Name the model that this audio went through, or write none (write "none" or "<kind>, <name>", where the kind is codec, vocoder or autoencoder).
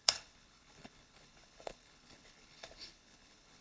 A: codec, HILCodec